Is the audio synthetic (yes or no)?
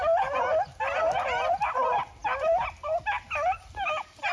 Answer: no